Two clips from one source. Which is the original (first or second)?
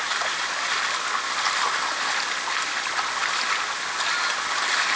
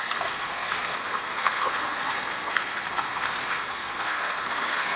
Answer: first